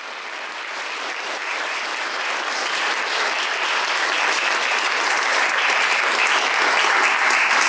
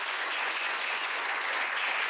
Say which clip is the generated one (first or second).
second